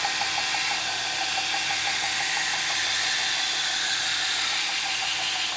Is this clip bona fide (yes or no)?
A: yes